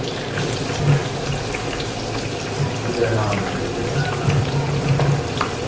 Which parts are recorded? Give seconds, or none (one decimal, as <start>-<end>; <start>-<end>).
0.0-5.7